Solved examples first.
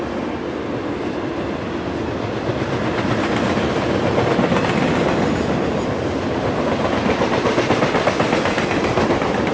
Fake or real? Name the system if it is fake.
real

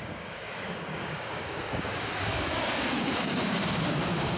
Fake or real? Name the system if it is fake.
fake, codec, DAC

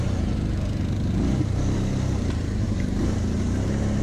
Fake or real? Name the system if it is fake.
fake, vocoder, BigVGAN v2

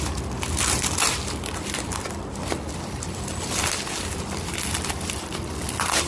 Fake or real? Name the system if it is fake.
real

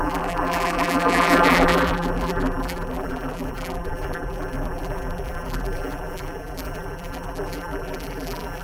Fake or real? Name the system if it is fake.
fake, vocoder, BigVGAN v2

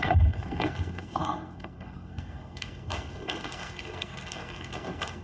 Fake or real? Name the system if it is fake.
fake, codec, SNAC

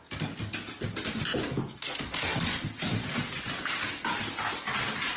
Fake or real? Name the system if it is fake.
real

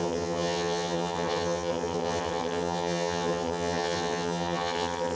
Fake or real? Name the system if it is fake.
fake, vocoder, HiFi-GAN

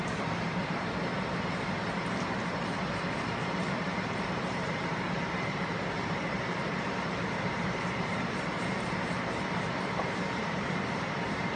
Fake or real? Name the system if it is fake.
fake, vocoder, BigVGAN v2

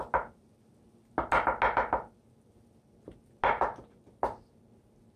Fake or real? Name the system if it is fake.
real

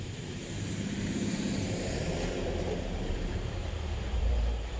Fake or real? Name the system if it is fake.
fake, vocoder, BigVGAN v2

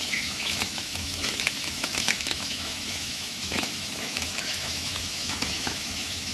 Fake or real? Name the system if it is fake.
fake, autoencoder, DAC-VAE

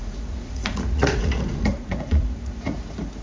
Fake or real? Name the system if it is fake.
fake, vocoder, Vocos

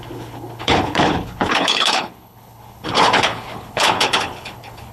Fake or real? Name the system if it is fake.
fake, codec, HILCodec